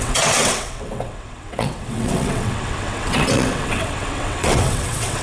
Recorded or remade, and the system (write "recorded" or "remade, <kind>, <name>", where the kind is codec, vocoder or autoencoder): remade, vocoder, WaveNeXt